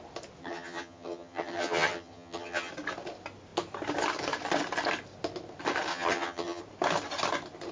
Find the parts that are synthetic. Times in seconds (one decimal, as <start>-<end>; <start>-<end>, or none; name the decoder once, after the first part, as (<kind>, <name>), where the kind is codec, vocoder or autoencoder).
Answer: 0.4-2.7 (vocoder, HiFi-GAN); 5.9-6.6